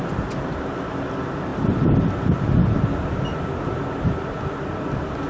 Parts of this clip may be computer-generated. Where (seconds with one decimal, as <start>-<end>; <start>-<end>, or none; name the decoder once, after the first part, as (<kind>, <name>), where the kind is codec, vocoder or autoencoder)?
none

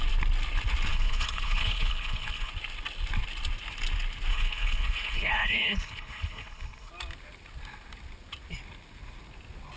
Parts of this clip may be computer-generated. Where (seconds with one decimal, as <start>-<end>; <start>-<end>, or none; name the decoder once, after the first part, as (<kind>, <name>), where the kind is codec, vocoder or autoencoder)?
0.9-2.5 (codec, HILCodec); 4.3-6.9

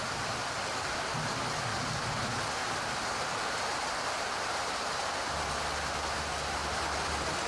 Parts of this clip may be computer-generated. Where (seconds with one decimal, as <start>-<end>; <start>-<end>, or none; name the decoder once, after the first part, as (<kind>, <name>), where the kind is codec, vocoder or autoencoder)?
2.6-5.3 (vocoder, BigVGAN v2)

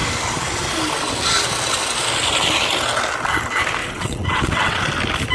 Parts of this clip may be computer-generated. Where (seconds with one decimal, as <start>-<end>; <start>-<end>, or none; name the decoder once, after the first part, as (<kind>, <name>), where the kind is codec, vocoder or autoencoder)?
3.8-4.8 (vocoder, WaveNeXt)